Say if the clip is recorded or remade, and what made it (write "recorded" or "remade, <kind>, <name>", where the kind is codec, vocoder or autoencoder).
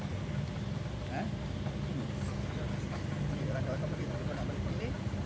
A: recorded